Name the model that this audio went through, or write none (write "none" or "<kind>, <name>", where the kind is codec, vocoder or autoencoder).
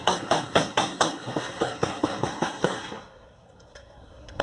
codec, SNAC